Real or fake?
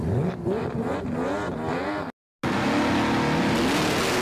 real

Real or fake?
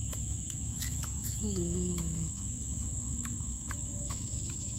fake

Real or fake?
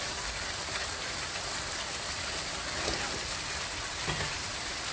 real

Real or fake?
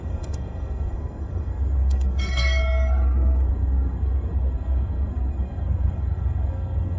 fake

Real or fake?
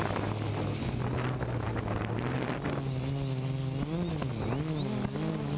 real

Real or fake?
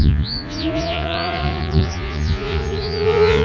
fake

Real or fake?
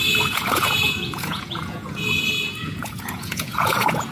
fake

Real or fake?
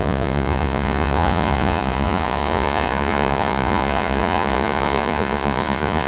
fake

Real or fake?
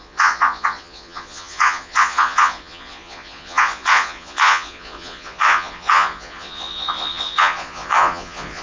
fake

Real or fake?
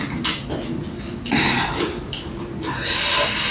real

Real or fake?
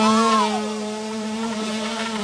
real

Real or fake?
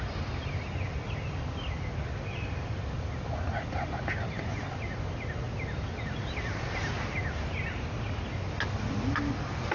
real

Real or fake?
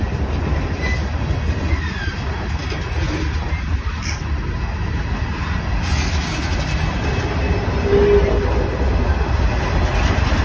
real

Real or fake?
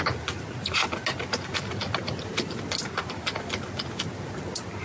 real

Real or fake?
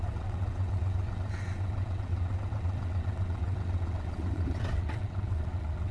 fake